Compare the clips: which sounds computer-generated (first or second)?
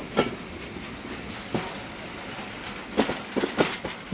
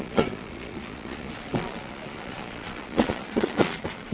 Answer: second